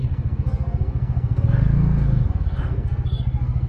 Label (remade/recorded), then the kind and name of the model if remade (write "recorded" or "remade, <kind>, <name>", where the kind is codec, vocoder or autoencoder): remade, codec, SNAC